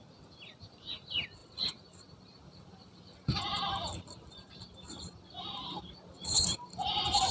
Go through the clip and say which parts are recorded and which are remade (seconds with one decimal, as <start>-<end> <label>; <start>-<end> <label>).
0.0-1.4 recorded; 1.4-5.8 remade; 5.8-7.3 recorded